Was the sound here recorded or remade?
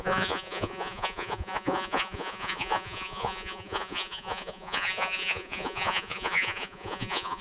remade